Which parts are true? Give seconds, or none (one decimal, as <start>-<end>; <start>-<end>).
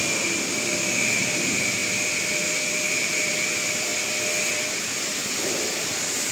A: 1.8-2.4; 3.9-4.5; 5.2-6.3